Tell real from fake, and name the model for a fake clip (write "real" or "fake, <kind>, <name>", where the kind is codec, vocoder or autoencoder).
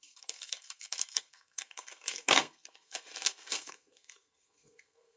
fake, codec, SNAC